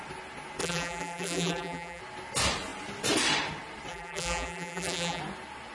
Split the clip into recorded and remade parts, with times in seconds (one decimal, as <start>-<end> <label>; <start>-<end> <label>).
0.0-0.6 recorded; 0.6-2.0 remade; 2.0-3.9 recorded; 3.9-5.2 remade; 5.2-5.7 recorded